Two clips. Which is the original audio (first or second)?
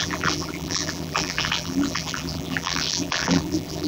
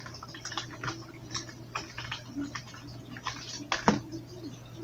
second